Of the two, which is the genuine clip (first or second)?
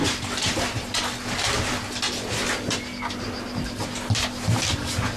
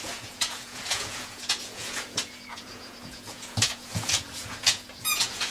first